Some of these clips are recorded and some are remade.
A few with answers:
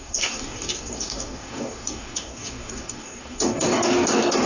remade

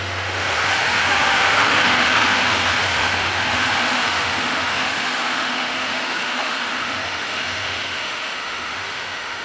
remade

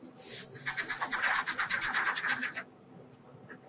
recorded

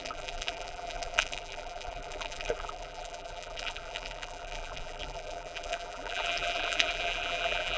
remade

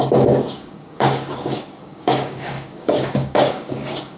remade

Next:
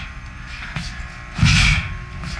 recorded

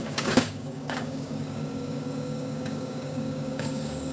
remade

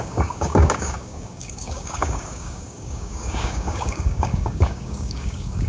remade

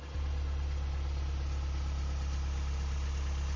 recorded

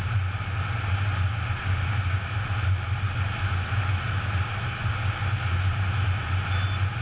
recorded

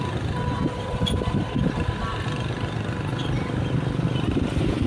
recorded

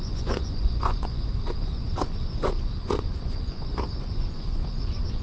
remade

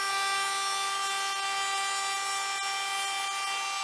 recorded